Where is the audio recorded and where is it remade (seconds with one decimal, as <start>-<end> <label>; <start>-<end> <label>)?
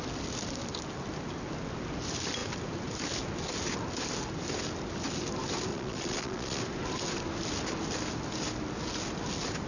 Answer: 0.0-5.7 recorded; 5.7-6.6 remade; 6.6-9.7 recorded